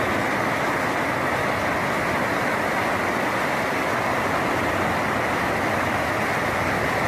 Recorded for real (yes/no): yes